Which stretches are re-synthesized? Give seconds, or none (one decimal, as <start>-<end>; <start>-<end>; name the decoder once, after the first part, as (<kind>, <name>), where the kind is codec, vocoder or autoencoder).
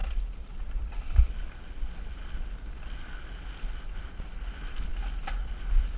none